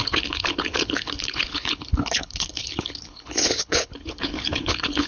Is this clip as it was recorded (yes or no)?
no